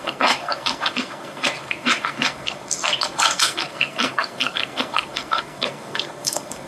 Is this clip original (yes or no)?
no